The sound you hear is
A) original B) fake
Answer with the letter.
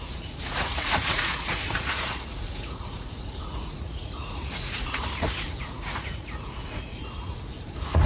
B